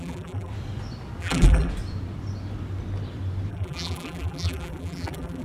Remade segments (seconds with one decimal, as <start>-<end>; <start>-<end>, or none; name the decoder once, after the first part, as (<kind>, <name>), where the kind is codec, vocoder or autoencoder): 0.0-0.5 (vocoder, BigVGAN v2); 1.2-1.7; 3.5-5.4